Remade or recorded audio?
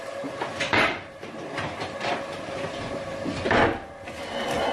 recorded